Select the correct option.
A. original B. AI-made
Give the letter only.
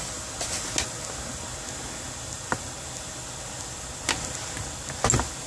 A